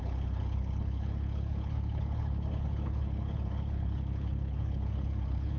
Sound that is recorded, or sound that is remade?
remade